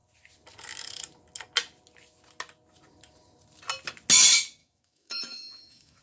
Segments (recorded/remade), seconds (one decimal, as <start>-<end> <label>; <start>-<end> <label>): 0.0-4.6 recorded; 4.6-6.0 remade

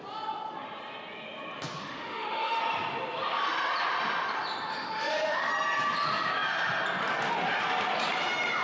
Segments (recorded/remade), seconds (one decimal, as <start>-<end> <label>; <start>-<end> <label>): 0.0-1.8 recorded; 1.8-2.6 remade; 2.6-4.7 recorded; 4.7-5.5 remade; 5.5-8.6 recorded